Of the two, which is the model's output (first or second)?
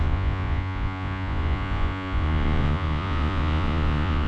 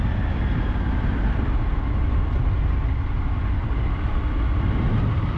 first